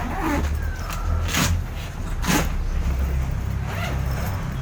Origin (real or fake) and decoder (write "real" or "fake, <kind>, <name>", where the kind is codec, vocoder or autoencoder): real